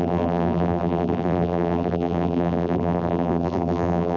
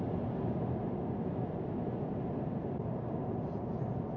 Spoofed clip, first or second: first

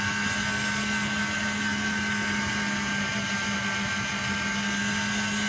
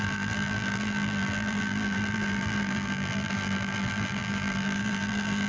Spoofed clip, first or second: second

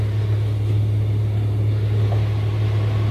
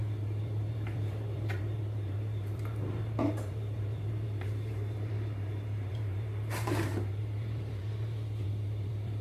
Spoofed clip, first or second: second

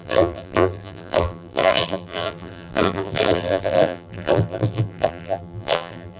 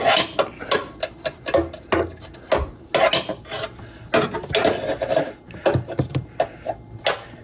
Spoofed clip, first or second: first